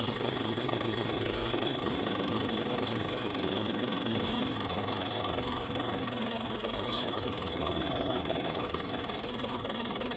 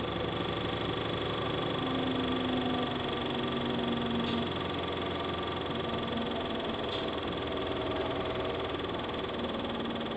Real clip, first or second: second